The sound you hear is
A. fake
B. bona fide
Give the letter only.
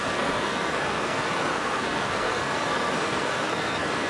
A